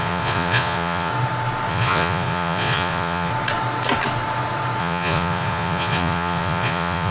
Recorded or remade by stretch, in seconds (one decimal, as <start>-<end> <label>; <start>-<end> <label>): 0.0-1.1 remade; 1.1-1.7 recorded; 1.7-3.3 remade; 3.3-4.8 recorded; 4.8-7.1 remade